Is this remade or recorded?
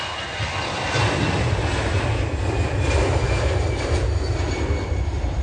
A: recorded